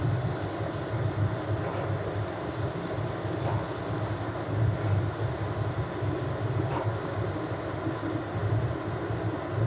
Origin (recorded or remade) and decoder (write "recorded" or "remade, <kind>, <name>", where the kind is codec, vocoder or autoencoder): recorded